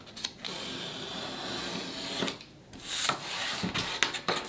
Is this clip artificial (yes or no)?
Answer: no